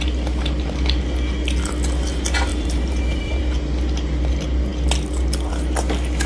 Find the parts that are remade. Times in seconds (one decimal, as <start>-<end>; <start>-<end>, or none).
2.5-3.4